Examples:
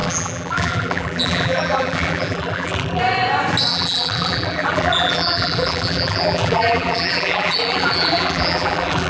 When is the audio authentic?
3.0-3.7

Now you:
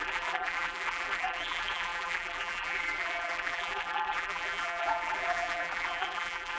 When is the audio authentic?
none

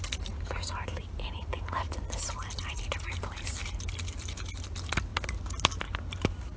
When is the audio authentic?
0.0-6.6

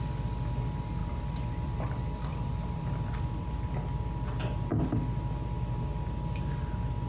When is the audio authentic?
0.0-1.0; 3.7-7.1

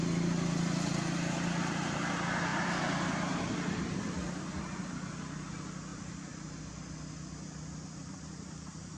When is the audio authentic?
0.0-5.9; 6.4-9.0